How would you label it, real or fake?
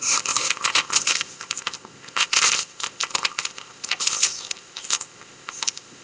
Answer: fake